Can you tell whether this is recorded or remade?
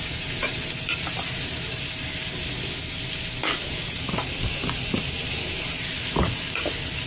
recorded